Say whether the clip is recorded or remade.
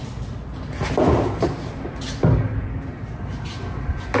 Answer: recorded